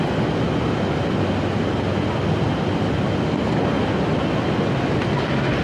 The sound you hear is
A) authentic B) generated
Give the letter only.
A